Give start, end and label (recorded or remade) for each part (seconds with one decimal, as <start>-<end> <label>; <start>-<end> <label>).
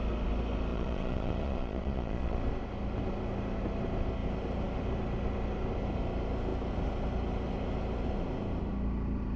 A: 0.0-0.7 recorded; 0.7-2.4 remade; 2.4-9.4 recorded